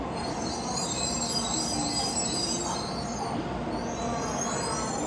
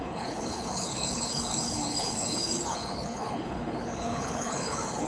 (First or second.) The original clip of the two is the first